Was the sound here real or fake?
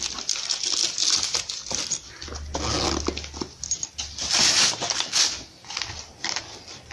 real